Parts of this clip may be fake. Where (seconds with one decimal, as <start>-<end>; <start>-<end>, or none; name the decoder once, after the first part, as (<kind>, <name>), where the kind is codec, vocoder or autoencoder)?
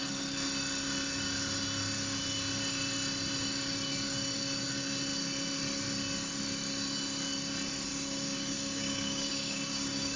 7.9-10.2 (codec, DAC)